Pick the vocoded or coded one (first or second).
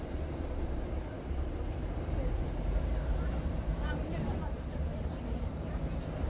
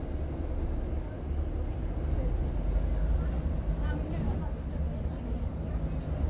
first